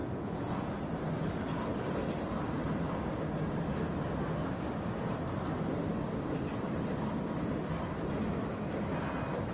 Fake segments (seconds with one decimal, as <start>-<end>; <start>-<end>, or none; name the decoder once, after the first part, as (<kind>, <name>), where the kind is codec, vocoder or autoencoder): 0.0-0.7 (vocoder, Vocos)